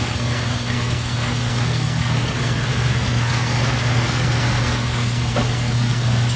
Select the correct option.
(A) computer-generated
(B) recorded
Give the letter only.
A